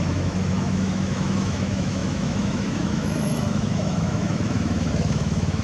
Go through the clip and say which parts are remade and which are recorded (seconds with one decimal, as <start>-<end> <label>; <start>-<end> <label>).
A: 0.0-5.6 remade